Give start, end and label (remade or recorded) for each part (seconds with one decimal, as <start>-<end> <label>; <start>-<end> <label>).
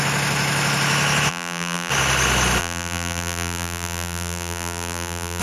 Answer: 0.0-1.3 recorded; 1.3-1.9 remade; 1.9-2.6 recorded; 2.6-5.4 remade